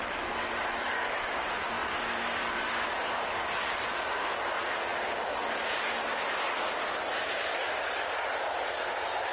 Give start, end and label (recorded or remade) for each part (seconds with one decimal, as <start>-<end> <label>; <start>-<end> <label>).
0.0-9.3 recorded